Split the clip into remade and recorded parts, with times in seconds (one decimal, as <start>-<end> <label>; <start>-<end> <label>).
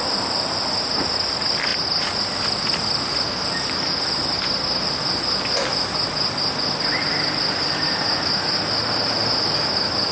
0.0-10.1 recorded